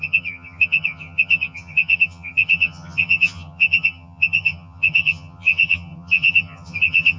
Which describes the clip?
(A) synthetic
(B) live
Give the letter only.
A